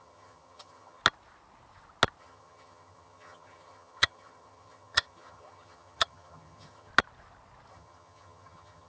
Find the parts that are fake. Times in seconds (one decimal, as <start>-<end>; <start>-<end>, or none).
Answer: 0.0-1.0; 2.2-6.9; 7.7-8.9